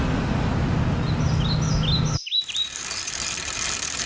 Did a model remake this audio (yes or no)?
no